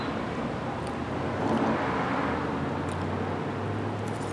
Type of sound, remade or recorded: recorded